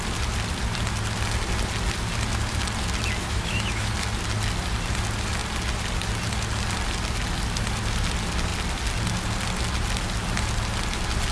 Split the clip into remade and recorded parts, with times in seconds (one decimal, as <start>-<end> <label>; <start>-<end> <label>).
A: 0.0-3.2 recorded; 3.2-3.9 remade; 3.9-11.3 recorded